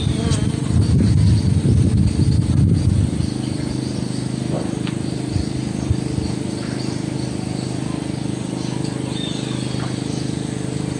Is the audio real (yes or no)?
yes